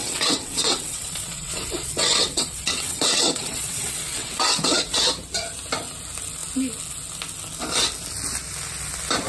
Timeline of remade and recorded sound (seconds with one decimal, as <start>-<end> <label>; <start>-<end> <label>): 0.0-5.0 remade; 5.0-9.3 recorded